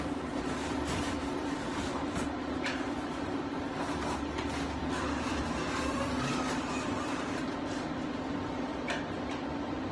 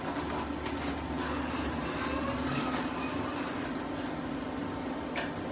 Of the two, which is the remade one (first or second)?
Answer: first